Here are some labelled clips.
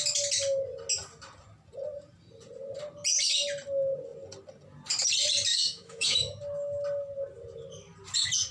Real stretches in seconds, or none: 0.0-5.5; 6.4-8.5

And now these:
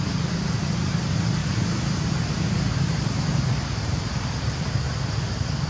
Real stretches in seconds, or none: 0.0-1.4; 4.8-5.7

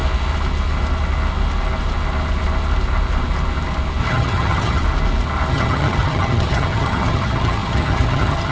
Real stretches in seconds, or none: 0.0-4.0; 4.8-5.5